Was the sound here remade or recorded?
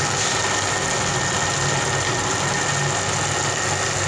recorded